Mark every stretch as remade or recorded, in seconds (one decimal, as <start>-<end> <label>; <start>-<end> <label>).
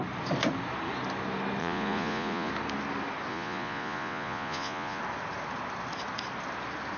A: 0.0-1.6 recorded; 1.6-2.5 remade; 2.5-3.3 recorded; 3.3-5.0 remade; 5.0-7.0 recorded